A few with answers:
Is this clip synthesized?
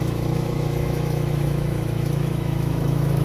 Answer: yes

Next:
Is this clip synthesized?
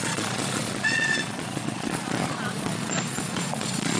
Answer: yes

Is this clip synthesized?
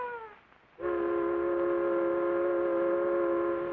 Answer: no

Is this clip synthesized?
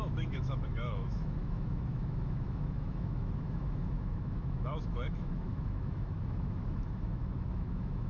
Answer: yes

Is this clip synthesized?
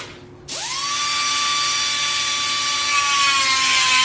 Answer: no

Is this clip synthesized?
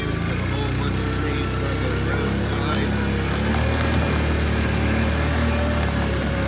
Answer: no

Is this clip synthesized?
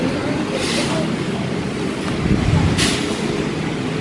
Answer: no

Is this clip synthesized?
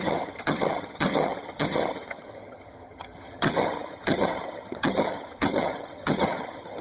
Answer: yes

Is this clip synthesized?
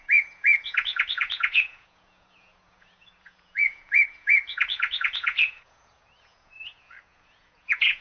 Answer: yes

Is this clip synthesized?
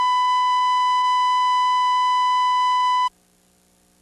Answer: no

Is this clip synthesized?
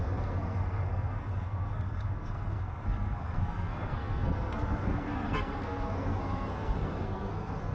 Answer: yes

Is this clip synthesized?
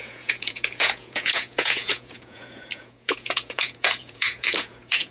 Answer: yes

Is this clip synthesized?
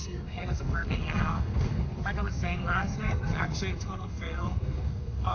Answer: yes